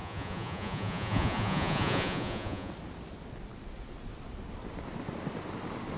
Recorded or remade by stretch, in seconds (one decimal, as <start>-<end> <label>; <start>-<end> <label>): 0.0-2.7 remade; 2.7-6.0 recorded